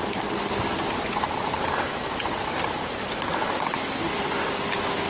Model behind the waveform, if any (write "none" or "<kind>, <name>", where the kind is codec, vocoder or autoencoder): none